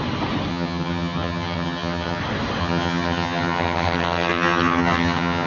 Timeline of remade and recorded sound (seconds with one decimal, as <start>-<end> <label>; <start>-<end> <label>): 0.0-0.5 recorded; 0.5-2.2 remade; 2.2-2.6 recorded; 2.6-5.5 remade